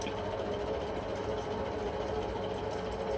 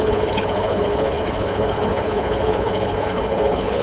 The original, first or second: first